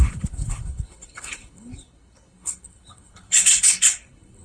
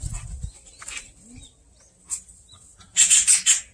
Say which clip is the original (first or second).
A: second